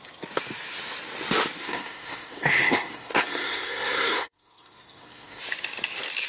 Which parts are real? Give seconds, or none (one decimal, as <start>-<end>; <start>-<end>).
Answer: 0.0-1.6; 5.4-6.3

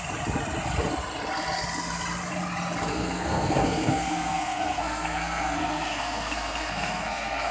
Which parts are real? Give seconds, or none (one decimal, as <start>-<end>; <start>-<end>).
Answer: 0.0-2.9

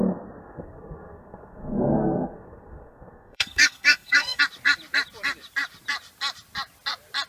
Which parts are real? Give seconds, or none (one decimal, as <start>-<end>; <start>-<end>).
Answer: 0.0-0.4; 4.4-7.3

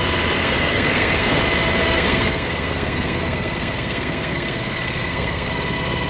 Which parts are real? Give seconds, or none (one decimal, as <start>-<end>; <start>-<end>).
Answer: 0.0-0.4; 1.4-1.8; 5.5-6.1

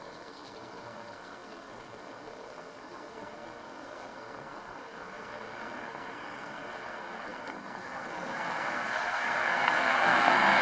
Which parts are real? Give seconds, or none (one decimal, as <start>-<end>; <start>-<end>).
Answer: none